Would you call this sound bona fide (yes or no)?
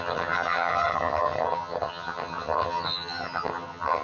no